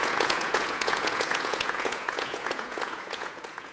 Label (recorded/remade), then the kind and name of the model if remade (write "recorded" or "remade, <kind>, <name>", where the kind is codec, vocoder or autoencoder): remade, vocoder, Vocos